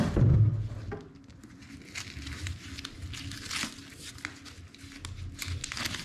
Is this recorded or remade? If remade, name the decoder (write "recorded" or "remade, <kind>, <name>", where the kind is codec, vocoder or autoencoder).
recorded